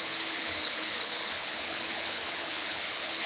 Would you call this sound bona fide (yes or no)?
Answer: no